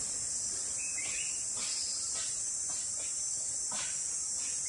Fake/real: real